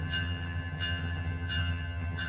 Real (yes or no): no